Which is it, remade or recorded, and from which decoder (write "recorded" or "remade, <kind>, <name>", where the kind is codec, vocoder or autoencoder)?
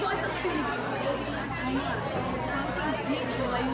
recorded